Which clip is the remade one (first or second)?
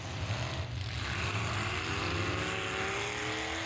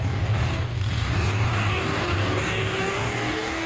second